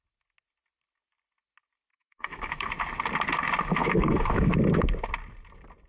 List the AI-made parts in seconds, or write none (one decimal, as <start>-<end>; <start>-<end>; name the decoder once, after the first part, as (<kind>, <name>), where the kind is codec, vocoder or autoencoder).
1.9-2.7 (autoencoder, DAC-VAE); 3.8-4.5